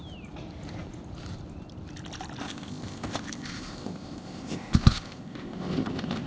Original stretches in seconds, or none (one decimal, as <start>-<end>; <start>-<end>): 0.0-2.4